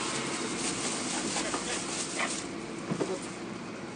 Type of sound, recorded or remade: recorded